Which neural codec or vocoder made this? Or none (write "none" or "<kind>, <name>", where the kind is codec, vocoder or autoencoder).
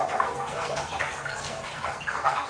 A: codec, SNAC